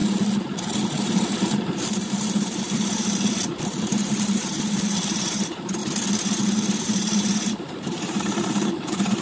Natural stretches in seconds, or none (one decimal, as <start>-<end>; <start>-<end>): 0.0-1.0; 5.8-6.8